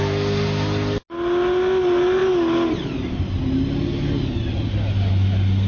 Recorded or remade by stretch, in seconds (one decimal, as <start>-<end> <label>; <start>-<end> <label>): 0.0-5.7 recorded